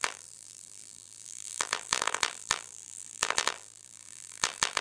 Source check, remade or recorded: remade